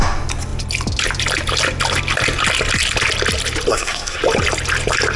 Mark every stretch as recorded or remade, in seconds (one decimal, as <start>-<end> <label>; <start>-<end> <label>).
0.0-3.7 recorded; 3.7-4.2 remade; 4.2-5.2 recorded